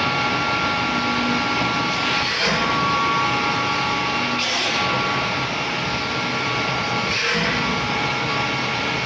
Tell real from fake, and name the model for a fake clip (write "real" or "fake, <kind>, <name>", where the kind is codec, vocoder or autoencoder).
real